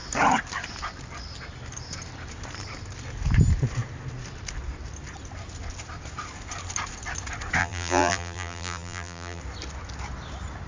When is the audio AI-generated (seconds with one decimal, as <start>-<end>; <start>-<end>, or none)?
7.6-9.4